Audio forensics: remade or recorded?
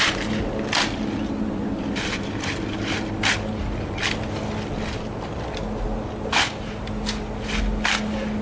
recorded